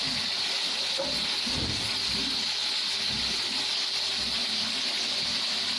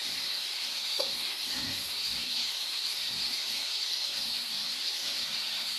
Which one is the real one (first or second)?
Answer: first